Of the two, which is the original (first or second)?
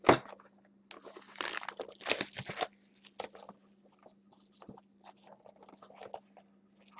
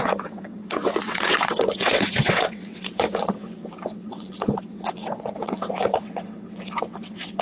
first